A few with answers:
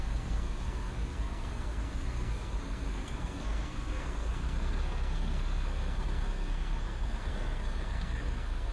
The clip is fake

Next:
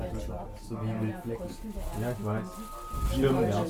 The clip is real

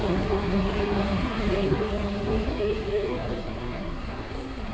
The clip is fake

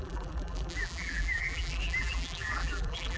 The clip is fake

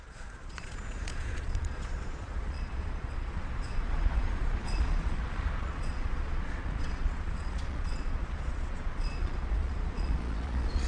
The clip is fake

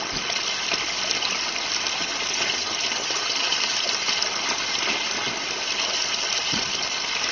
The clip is real